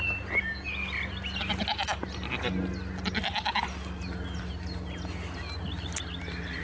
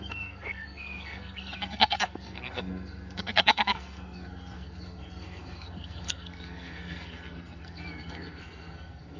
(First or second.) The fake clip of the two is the second